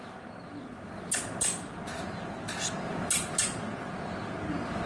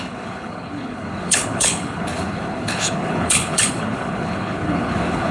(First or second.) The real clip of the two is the first